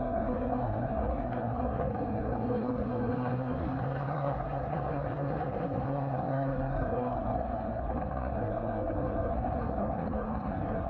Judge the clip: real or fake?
fake